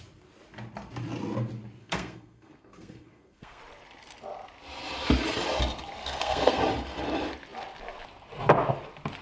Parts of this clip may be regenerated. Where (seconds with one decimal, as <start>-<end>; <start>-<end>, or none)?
1.8-3.6; 6.0-6.6